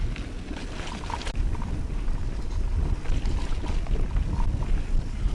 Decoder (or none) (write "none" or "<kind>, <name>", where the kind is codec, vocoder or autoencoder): none